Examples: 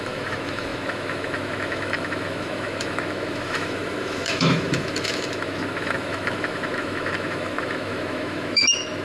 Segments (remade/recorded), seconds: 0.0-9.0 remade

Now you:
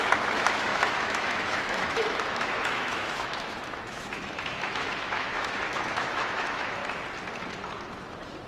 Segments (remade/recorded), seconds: 0.0-6.8 remade; 6.8-8.5 recorded

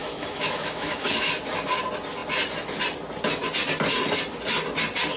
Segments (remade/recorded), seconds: 0.0-1.3 remade; 1.3-5.2 recorded

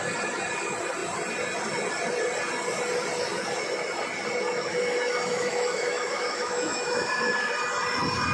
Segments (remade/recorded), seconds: 0.0-4.7 recorded; 4.7-7.5 remade; 7.5-8.3 recorded